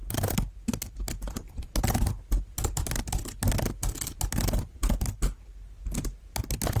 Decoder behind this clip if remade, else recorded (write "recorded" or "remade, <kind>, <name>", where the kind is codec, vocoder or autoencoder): recorded